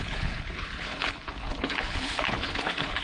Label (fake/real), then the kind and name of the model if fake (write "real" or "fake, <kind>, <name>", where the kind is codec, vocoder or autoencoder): fake, codec, HILCodec